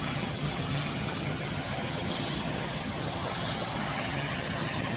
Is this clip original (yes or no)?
no